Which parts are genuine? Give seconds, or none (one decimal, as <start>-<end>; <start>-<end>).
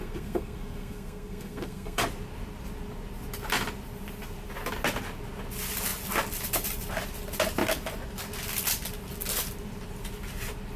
2.0-10.8